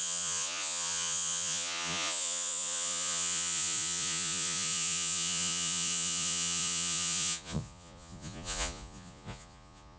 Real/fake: fake